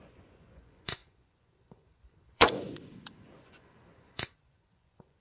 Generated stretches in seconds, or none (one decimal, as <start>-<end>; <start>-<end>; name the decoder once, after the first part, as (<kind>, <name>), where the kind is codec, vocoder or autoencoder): 0.0-5.2 (vocoder, Vocos)